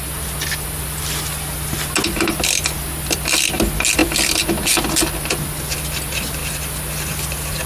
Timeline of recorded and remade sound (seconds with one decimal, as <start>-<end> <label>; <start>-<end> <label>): 0.0-7.7 recorded